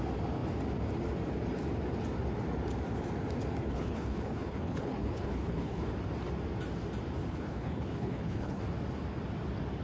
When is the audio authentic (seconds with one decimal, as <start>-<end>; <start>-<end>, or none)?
0.0-3.6; 5.9-7.2; 8.6-9.8